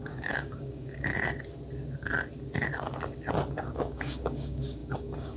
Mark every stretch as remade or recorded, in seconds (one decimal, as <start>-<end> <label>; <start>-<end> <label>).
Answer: 0.0-1.1 remade; 1.1-3.5 recorded; 3.5-5.4 remade